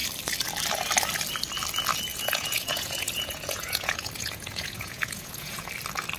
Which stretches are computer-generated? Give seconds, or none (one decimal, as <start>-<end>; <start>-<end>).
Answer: 2.1-5.7